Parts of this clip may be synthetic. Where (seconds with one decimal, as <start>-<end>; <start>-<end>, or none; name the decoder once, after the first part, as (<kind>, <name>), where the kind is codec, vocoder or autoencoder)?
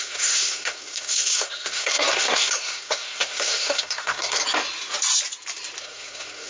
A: 0.0-4.4 (codec, SNAC); 5.8-6.5